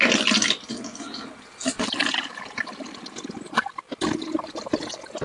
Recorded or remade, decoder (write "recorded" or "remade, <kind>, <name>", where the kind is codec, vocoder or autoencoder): recorded